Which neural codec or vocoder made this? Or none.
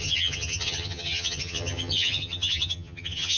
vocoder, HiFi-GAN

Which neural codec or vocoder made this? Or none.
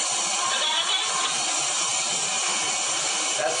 none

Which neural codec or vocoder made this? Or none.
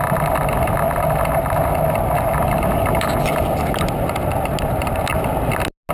none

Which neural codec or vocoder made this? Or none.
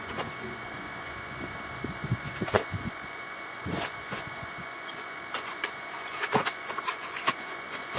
vocoder, Vocos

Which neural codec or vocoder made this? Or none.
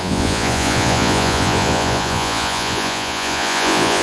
vocoder, Vocos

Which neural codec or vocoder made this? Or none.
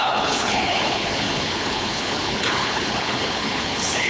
codec, HILCodec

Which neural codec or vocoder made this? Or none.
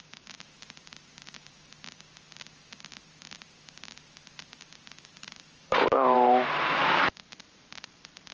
vocoder, BigVGAN v2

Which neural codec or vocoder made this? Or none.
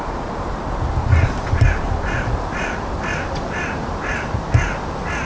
none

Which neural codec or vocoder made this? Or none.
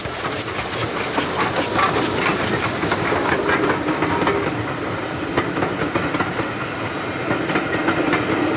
none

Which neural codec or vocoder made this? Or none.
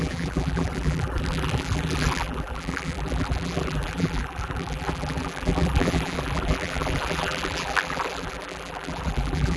vocoder, BigVGAN v2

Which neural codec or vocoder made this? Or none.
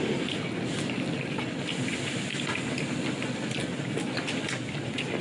none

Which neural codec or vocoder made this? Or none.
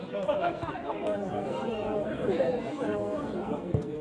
codec, SNAC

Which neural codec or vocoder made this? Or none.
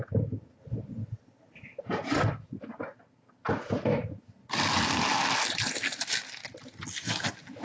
none